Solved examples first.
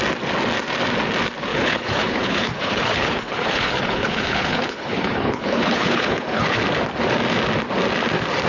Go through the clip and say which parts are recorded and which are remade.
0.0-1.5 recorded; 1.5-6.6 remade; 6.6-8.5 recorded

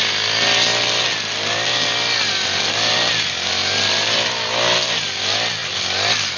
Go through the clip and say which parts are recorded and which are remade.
0.0-6.4 recorded